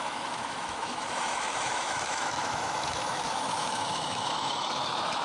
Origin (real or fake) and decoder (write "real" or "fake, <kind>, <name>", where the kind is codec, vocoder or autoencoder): fake, autoencoder, DAC-VAE